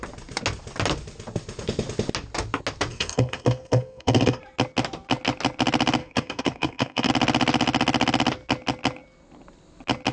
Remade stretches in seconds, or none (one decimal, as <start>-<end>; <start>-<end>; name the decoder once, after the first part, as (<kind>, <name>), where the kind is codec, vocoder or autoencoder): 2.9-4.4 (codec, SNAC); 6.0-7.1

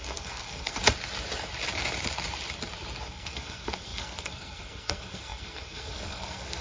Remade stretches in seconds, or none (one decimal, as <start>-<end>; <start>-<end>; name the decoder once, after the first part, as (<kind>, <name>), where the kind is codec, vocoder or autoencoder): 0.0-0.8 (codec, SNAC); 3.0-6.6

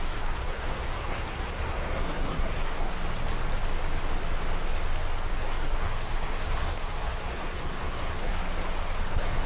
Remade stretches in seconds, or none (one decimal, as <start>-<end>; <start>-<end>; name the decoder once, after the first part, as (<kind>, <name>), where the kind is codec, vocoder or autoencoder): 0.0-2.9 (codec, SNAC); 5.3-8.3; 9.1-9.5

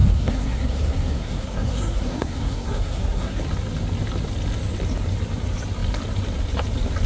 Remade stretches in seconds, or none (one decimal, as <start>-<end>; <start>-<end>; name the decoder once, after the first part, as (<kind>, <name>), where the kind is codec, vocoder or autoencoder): 0.0-3.4 (codec, SNAC)